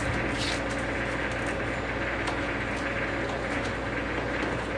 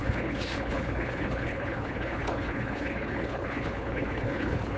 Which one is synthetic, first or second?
second